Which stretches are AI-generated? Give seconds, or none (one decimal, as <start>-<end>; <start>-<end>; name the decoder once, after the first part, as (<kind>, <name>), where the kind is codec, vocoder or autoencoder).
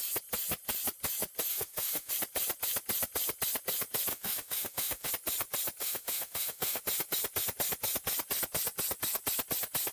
1.5-2.1 (autoencoder, DAC-VAE); 4.1-5.1; 5.8-6.8